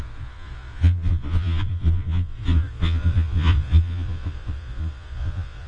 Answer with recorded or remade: remade